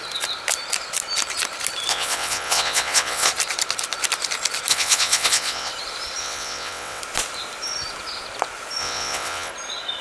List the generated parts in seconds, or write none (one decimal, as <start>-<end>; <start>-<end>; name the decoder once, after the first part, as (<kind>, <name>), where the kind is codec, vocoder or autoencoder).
1.9-3.3 (vocoder, WaveNeXt); 4.7-5.7; 6.2-7.0; 8.8-9.5